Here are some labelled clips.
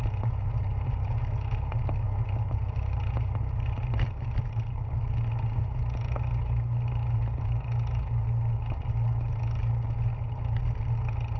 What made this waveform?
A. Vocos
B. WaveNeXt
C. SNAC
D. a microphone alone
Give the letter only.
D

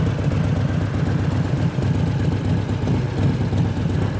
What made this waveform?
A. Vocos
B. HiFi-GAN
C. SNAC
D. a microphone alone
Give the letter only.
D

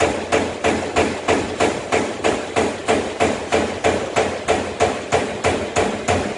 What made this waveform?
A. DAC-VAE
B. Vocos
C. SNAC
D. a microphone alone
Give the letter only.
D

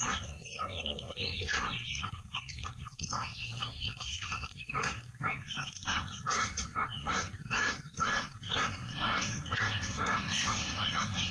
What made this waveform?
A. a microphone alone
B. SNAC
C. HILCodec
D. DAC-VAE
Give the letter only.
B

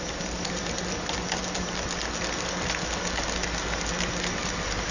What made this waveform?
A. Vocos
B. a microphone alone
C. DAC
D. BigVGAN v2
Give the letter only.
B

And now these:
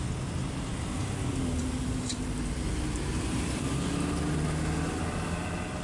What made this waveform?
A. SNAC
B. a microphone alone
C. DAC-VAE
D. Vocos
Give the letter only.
B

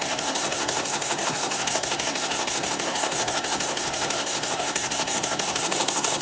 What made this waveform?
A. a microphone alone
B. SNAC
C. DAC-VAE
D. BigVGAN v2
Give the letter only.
B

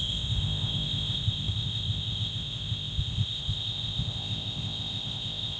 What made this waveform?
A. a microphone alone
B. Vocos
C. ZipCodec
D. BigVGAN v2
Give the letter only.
C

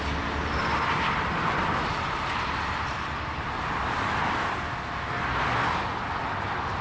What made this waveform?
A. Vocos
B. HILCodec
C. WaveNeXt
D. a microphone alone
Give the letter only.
D